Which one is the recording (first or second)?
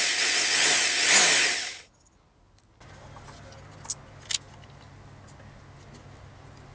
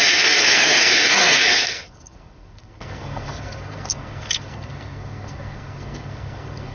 first